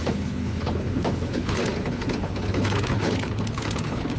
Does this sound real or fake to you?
fake